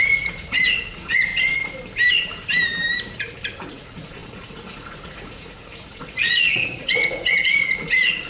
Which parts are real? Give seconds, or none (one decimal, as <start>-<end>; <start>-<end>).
1.3-3.7